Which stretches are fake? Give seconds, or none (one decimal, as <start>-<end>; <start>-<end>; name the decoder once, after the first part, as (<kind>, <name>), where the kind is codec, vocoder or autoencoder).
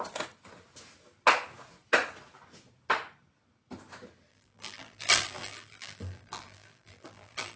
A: 4.3-7.6 (vocoder, BigVGAN v2)